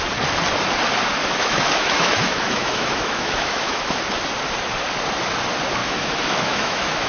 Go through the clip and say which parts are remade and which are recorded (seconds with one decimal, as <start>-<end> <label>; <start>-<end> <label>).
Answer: 0.0-1.2 recorded; 1.2-4.0 remade; 4.0-5.8 recorded; 5.8-7.1 remade